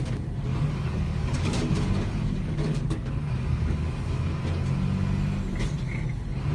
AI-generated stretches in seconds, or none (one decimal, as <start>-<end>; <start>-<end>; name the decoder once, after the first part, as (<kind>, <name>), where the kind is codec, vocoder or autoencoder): 0.5-4.4 (codec, DAC)